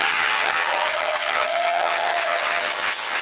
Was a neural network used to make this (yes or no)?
yes